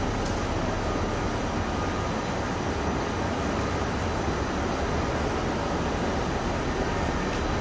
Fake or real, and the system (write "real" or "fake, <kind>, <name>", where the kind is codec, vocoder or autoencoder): real